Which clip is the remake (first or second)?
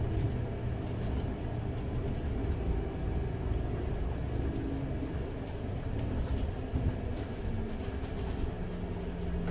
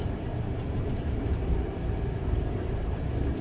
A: second